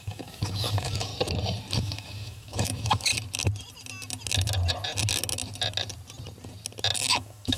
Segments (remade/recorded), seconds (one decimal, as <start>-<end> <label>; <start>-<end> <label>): 0.0-1.1 remade; 1.1-1.8 recorded; 1.8-3.1 remade; 3.1-7.1 recorded; 7.1-7.6 remade